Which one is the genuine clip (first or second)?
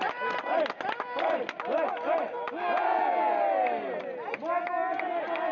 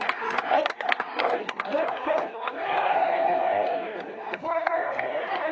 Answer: first